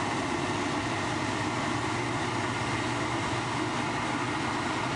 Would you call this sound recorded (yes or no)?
yes